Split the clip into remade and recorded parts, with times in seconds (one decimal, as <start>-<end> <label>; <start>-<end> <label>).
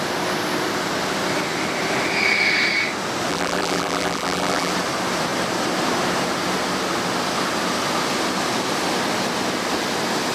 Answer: 0.0-3.3 recorded; 3.3-4.7 remade; 4.7-10.3 recorded